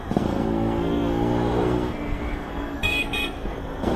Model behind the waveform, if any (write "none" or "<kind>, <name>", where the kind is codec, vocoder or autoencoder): codec, SNAC